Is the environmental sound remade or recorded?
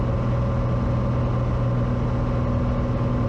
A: recorded